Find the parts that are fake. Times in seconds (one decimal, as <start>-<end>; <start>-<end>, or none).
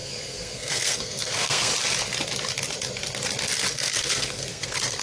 0.0-1.7; 3.7-5.0